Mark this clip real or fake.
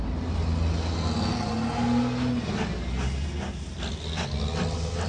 real